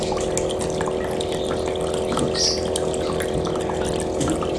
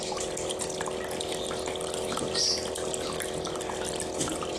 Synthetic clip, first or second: second